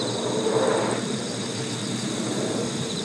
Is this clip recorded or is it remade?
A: remade